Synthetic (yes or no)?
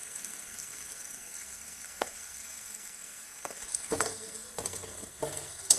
yes